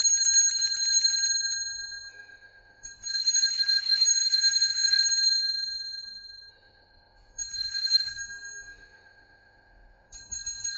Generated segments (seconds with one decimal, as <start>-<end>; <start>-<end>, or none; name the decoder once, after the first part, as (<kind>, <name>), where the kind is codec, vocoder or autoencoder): 2.1-5.0 (autoencoder, DAC-VAE); 6.5-10.8